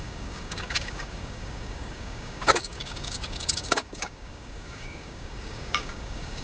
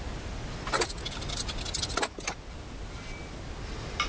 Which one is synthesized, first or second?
first